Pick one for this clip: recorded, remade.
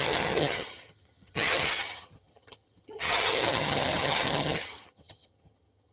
remade